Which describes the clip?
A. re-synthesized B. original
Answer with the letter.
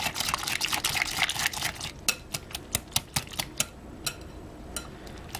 B